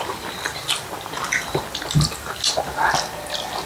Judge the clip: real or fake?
real